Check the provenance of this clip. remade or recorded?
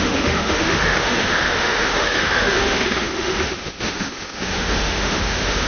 remade